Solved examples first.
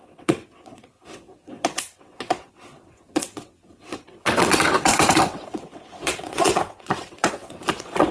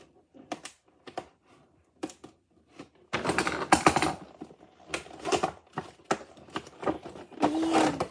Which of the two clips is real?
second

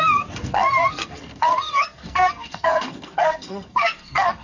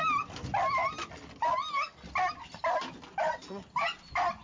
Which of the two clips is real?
second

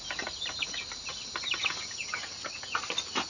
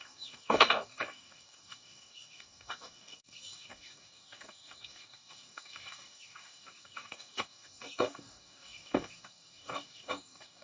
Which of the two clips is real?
first